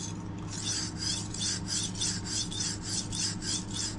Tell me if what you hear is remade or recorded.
recorded